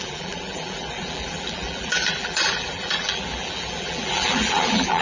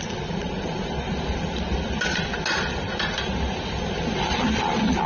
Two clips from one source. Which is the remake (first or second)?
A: first